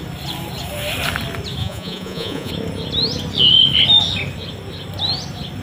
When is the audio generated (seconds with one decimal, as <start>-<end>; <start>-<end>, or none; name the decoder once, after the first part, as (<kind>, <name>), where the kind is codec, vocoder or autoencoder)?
1.6-2.5 (vocoder, Vocos)